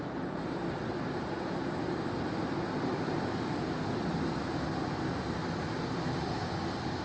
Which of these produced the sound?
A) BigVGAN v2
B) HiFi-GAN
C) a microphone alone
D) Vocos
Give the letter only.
C